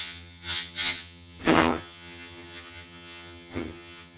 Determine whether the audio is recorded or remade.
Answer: remade